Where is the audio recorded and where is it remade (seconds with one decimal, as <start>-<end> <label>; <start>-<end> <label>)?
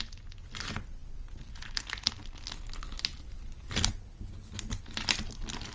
0.0-1.0 recorded; 1.0-2.1 remade; 2.1-3.4 recorded; 3.4-4.1 remade; 4.1-5.7 recorded